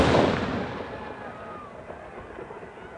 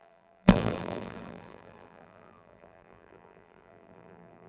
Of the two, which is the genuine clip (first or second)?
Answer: first